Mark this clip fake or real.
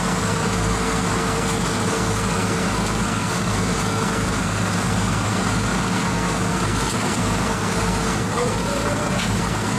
fake